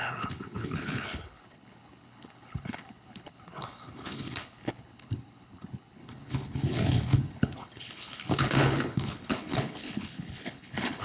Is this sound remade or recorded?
remade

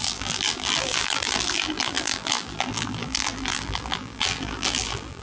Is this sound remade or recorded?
remade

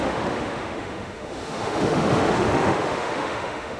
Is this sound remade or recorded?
remade